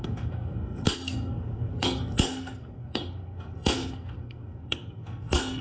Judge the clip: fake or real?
fake